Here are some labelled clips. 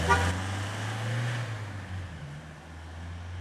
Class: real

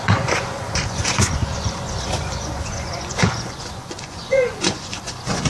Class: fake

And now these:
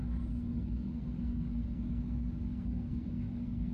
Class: fake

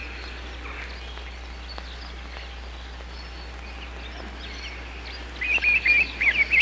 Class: real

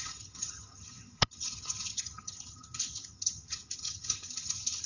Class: fake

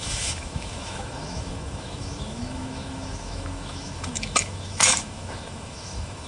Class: fake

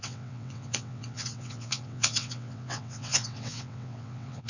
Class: fake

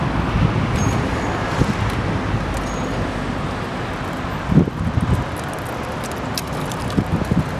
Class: real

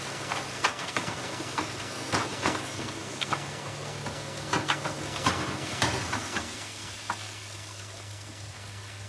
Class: fake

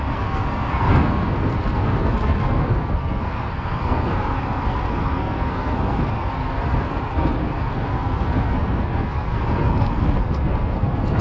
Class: fake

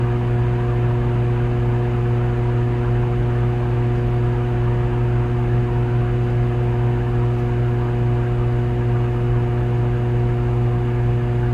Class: real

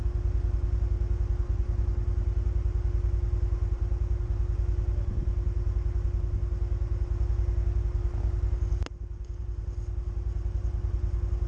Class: real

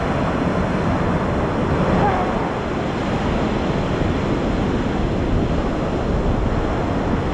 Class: real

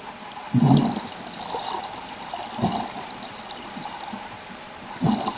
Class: real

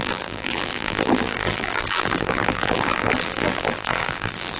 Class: fake